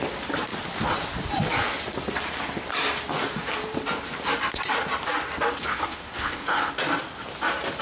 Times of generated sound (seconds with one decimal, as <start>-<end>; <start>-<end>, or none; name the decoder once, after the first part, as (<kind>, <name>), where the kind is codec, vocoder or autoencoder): 5.7-6.7 (codec, HILCodec)

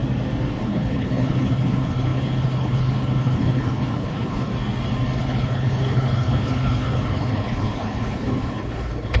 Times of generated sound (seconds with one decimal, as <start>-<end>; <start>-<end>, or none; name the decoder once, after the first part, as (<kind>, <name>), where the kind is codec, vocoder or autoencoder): 0.6-4.5 (codec, HILCodec); 5.2-9.2

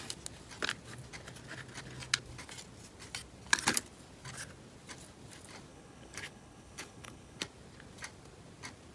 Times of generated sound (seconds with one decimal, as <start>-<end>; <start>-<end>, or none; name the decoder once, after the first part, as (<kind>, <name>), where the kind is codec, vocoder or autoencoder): 5.7-7.4 (codec, HILCodec)

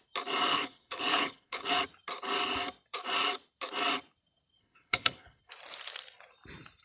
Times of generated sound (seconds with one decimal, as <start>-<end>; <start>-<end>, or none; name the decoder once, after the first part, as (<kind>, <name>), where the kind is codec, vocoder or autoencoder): 0.5-1.7 (codec, HILCodec); 4.6-5.4

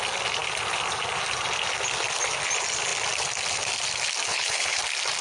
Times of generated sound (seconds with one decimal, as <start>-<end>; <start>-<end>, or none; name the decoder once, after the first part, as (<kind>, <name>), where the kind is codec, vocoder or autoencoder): 4.3-4.8 (codec, HILCodec)

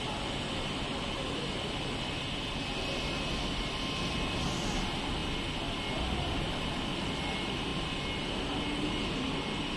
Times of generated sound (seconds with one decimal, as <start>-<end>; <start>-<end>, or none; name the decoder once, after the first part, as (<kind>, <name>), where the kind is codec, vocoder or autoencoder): none

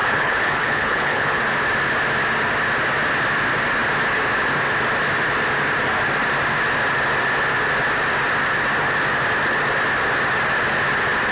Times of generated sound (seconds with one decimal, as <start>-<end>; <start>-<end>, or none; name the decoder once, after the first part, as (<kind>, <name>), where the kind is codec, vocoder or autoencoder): 0.0-1.4 (codec, HILCodec)

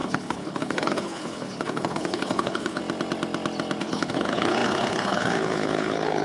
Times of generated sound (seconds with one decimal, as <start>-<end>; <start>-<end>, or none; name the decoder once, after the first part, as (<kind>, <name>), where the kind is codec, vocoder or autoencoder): 0.0-2.8 (codec, HILCodec); 3.8-6.2